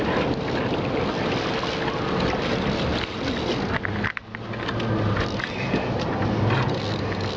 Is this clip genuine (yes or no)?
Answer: yes